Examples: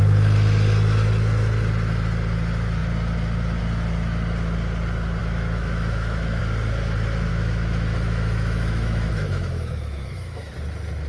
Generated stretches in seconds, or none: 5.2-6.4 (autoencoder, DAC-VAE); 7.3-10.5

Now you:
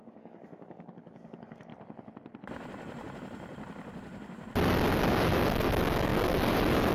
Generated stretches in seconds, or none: 0.0-1.7 (codec, DAC); 5.0-6.9

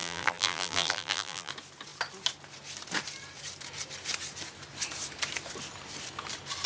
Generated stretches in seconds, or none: 0.0-1.5 (vocoder, BigVGAN v2)

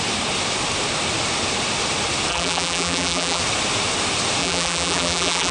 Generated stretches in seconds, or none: 2.3-3.4 (vocoder, BigVGAN v2); 4.4-5.5

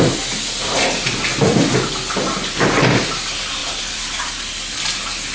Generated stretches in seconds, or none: 1.3-1.9 (vocoder, BigVGAN v2); 3.6-4.3

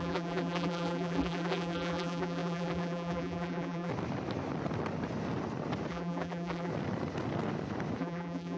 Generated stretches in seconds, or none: 0.0-3.9 (vocoder, BigVGAN v2); 5.9-6.7; 8.0-8.6

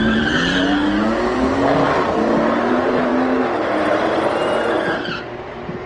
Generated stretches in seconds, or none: 0.0-0.8 (vocoder, BigVGAN v2); 2.7-3.1; 5.2-5.9

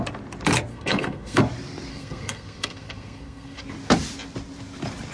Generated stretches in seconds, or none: 0.7-1.4 (codec, SNAC); 1.9-3.6